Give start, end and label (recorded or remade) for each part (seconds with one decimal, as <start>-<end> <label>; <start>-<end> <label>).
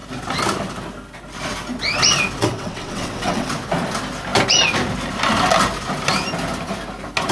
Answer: 0.0-2.4 recorded; 2.4-3.5 remade; 3.5-7.3 recorded